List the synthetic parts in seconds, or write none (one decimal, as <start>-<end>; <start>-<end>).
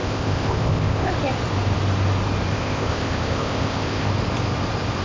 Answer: 0.0-1.1; 2.5-4.1